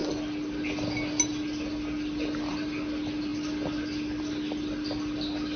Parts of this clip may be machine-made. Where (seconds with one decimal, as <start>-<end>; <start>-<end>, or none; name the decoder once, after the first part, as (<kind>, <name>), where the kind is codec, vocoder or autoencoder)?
none